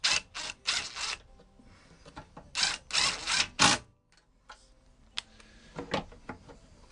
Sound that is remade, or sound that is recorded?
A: recorded